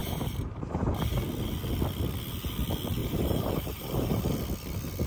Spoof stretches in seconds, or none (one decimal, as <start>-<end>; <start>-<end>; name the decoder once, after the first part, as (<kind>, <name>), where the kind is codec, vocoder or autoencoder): 0.0-0.8 (vocoder, BigVGAN v2); 3.0-4.2